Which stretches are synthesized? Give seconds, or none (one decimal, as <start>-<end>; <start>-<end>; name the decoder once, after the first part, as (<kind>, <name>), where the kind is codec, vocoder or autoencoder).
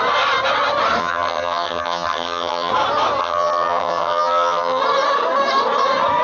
1.0-2.7 (vocoder, HiFi-GAN); 3.2-4.8